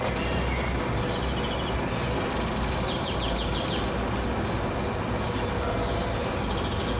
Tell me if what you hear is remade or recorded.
recorded